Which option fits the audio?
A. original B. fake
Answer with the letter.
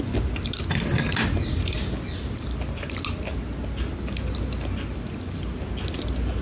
A